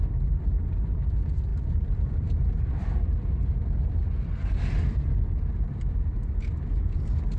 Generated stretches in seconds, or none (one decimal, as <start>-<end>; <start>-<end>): none